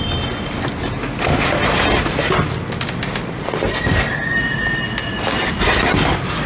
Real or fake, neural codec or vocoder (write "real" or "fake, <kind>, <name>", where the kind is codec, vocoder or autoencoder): real